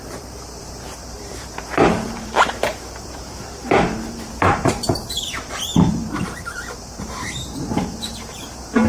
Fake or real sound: fake